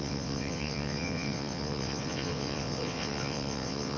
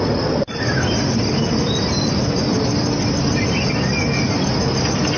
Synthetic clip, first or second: first